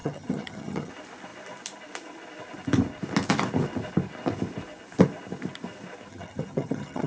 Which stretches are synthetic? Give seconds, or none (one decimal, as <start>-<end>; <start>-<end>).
0.0-0.9; 6.1-7.1